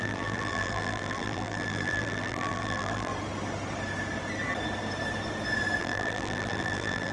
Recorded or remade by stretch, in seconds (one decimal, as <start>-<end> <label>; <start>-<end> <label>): 0.0-3.1 remade; 3.1-5.8 recorded; 5.8-7.1 remade